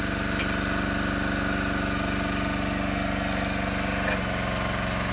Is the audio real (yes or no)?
yes